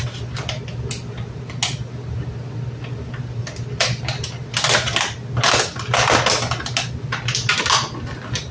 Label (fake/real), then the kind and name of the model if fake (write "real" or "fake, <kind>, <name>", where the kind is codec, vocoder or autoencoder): real